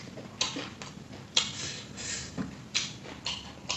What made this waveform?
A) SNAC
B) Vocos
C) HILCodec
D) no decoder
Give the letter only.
D